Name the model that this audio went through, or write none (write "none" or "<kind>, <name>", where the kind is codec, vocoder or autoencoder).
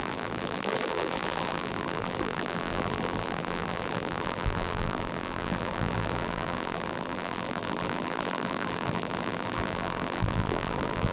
vocoder, BigVGAN v2